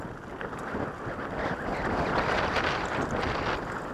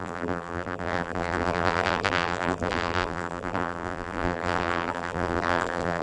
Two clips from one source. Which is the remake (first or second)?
second